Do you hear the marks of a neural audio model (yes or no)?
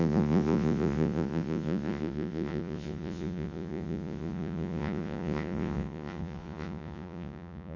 yes